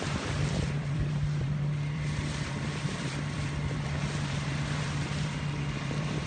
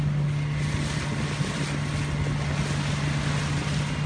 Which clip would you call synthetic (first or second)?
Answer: first